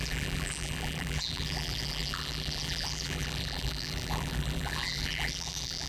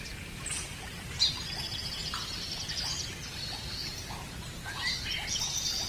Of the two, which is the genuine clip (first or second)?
second